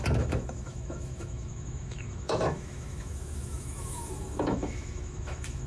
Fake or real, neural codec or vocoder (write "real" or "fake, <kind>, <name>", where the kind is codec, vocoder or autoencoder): fake, autoencoder, DAC-VAE